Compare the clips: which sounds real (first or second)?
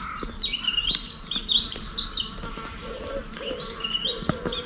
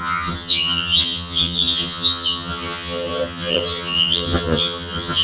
first